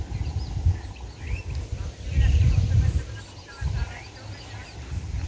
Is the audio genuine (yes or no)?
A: yes